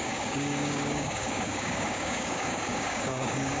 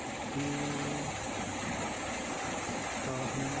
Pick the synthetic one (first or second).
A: first